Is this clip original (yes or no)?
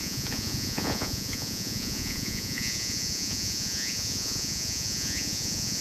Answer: no